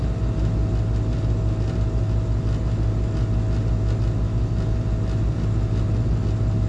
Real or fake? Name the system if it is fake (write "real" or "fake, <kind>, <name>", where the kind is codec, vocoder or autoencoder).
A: real